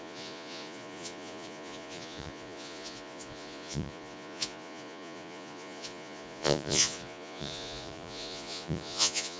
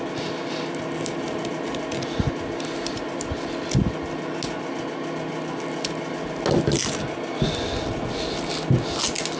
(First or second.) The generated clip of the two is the first